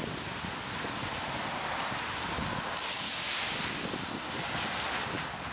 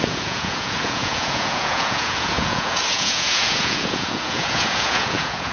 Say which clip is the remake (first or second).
second